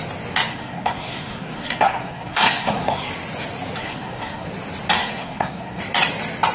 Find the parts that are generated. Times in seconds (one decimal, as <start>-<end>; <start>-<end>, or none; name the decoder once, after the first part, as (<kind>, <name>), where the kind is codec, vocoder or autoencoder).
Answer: 0.5-3.1 (codec, SNAC); 3.8-4.5; 5.0-5.8